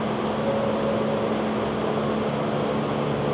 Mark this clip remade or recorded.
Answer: recorded